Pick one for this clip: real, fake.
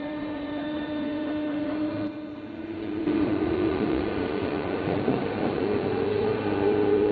fake